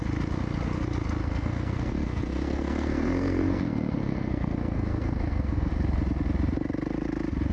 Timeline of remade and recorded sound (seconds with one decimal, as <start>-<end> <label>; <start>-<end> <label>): 0.0-1.2 recorded; 1.2-5.7 remade; 5.7-7.5 recorded